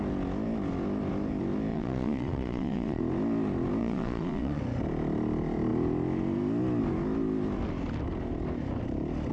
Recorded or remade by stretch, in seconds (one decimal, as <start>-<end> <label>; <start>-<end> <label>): 0.0-1.7 recorded; 1.7-3.0 remade; 3.0-3.8 recorded; 3.8-4.6 remade; 4.6-9.3 recorded